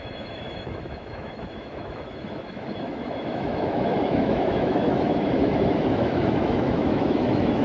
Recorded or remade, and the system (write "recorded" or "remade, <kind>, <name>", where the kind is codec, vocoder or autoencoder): remade, autoencoder, DAC-VAE